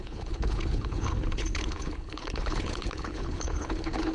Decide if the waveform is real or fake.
fake